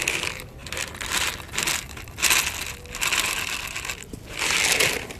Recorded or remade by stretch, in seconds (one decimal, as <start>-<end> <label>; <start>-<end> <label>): 0.0-5.2 recorded